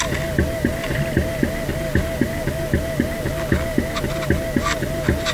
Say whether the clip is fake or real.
real